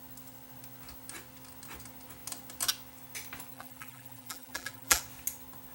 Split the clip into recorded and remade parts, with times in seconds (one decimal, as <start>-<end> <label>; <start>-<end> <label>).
0.0-3.5 recorded; 3.5-5.0 remade; 5.0-5.7 recorded